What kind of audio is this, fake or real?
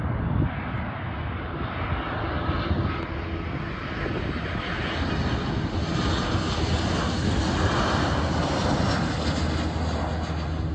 real